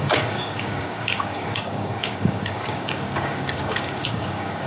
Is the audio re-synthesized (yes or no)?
yes